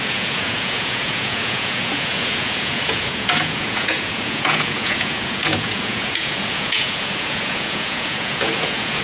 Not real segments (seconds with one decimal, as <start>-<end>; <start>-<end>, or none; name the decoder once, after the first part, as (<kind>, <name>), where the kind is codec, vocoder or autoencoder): 0.0-9.0 (vocoder, Vocos)